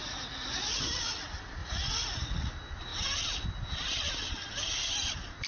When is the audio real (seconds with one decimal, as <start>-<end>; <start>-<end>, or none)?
0.8-1.6; 2.5-5.5